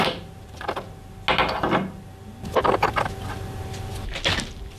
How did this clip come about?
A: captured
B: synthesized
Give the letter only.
A